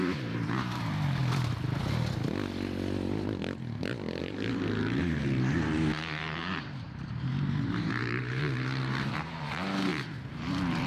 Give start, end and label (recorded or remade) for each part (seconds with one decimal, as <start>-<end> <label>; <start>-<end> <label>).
0.0-1.2 remade; 1.2-4.2 recorded; 4.2-10.9 remade